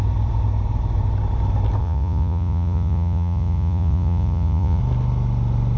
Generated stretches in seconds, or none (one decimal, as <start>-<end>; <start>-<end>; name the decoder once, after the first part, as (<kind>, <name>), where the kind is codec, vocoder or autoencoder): 1.8-4.8 (vocoder, Vocos)